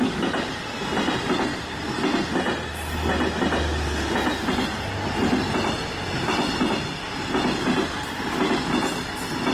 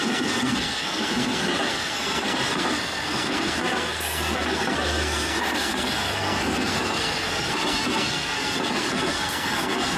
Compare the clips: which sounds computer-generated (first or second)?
second